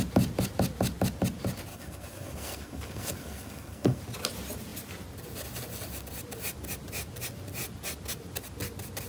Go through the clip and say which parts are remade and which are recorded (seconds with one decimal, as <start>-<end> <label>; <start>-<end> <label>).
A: 0.0-1.7 recorded; 1.7-4.0 remade; 4.0-9.1 recorded